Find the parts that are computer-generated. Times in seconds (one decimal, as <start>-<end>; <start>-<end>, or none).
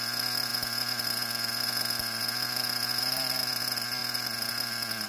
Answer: none